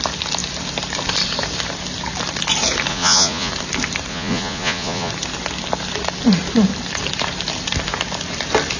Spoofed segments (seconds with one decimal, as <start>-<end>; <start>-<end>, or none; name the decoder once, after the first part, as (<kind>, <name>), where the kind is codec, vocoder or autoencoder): 2.9-3.5 (vocoder, Vocos); 4.1-5.1